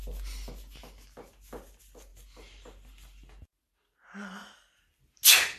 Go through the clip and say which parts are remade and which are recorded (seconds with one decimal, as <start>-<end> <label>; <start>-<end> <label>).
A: 0.0-5.6 recorded